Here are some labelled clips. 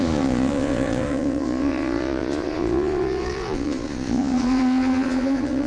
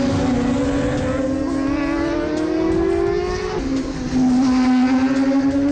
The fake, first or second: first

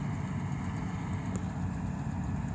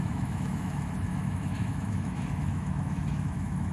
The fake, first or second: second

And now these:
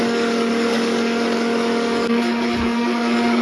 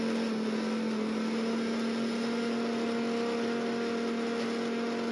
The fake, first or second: first